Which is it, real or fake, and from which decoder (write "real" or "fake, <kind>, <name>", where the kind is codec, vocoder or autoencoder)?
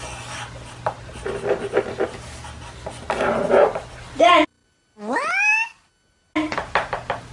real